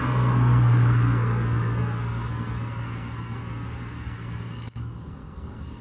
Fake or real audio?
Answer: fake